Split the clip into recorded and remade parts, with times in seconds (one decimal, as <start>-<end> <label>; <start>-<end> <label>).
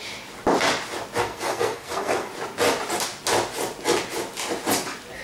0.0-1.2 recorded; 1.2-2.3 remade; 2.3-5.2 recorded